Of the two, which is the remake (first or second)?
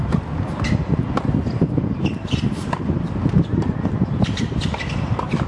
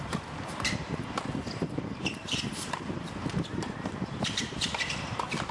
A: second